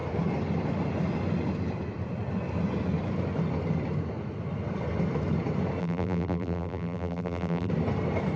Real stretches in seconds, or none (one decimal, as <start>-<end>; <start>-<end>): 0.0-5.8; 7.7-8.4